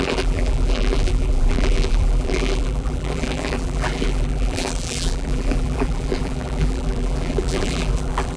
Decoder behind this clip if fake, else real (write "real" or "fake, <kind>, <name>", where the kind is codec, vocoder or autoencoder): fake, vocoder, BigVGAN v2